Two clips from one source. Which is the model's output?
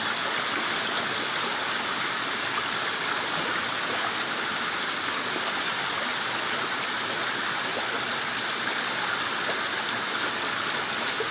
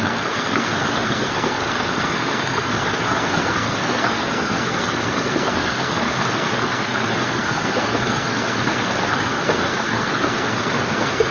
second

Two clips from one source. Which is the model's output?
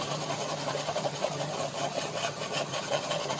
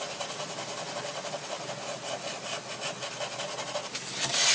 first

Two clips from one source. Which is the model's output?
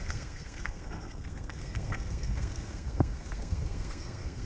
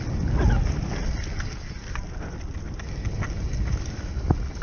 first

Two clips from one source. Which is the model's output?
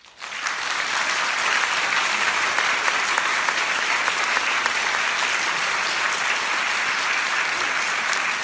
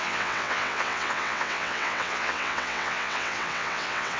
second